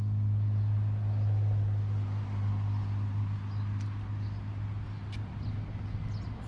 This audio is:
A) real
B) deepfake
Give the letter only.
A